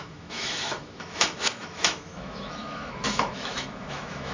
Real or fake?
fake